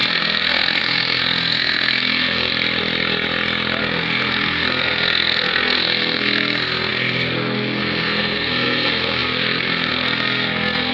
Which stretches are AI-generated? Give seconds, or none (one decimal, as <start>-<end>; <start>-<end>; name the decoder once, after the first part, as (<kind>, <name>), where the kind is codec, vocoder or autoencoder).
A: 0.0-2.5 (codec, SNAC); 3.8-10.9